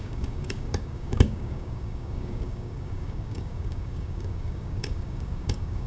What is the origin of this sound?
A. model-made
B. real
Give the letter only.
A